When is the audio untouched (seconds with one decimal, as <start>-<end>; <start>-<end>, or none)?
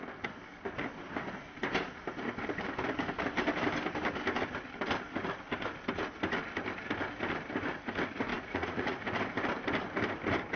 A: 0.0-8.3; 9.0-10.6